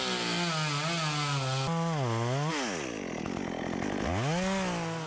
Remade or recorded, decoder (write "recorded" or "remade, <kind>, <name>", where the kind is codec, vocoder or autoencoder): recorded